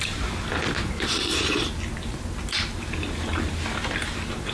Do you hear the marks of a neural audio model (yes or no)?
no